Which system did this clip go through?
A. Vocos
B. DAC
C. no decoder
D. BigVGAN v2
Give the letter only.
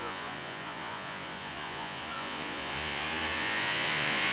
A